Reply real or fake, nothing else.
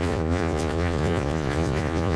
fake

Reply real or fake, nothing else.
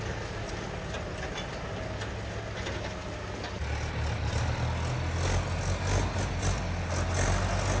real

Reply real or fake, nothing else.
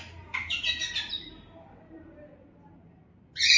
real